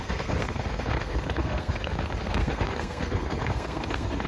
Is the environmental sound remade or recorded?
remade